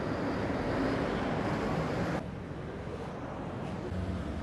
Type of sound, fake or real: real